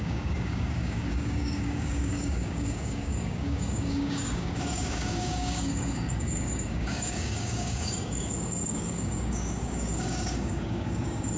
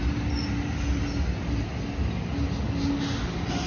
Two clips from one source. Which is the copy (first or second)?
first